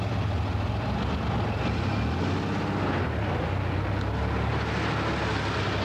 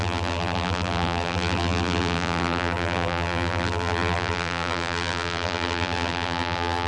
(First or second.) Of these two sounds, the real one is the first